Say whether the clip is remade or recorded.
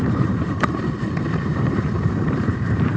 remade